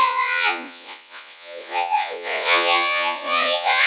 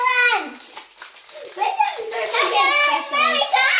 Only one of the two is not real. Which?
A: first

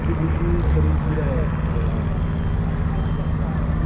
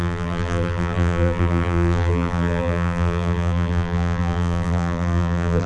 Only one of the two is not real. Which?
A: second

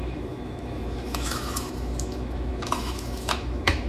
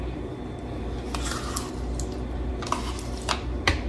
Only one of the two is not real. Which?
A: first